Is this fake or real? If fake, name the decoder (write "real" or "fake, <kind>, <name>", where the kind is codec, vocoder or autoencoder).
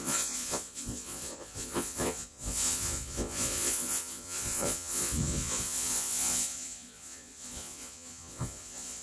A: fake, vocoder, Vocos